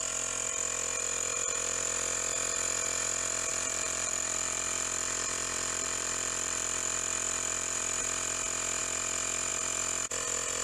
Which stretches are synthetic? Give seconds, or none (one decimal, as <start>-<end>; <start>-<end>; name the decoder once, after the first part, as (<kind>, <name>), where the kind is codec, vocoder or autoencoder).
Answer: 3.5-8.0 (vocoder, BigVGAN v2)